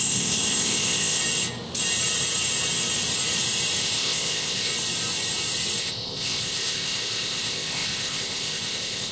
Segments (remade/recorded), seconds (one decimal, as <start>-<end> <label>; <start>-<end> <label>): 0.0-1.2 remade; 1.2-3.8 recorded; 3.8-4.7 remade; 4.7-5.8 recorded; 5.8-9.1 remade